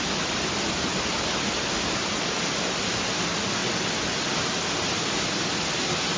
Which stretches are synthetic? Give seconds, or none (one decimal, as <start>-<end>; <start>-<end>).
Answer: none